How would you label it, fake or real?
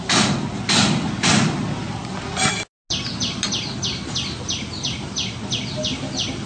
real